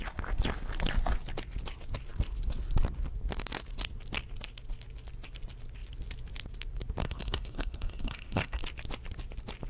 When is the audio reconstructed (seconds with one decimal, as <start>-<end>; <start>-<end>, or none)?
7.0-8.6

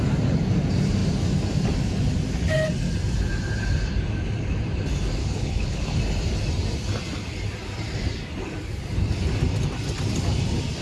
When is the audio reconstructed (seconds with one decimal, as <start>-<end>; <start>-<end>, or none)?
5.2-6.0

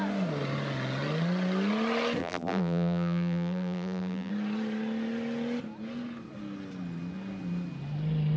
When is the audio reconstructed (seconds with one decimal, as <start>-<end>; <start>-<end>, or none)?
2.2-4.3